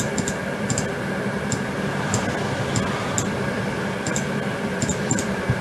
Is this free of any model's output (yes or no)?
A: yes